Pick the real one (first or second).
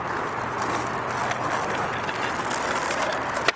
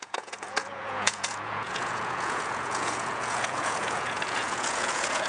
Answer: first